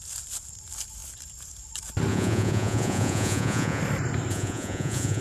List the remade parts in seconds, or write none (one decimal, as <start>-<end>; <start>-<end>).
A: 2.1-3.8; 4.3-5.2